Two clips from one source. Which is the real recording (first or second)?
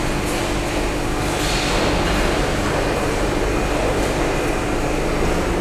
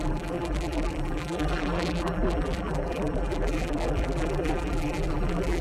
first